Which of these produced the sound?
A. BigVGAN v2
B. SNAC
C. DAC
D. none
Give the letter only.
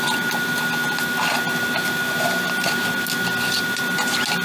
D